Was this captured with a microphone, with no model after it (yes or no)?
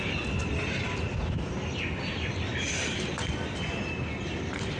yes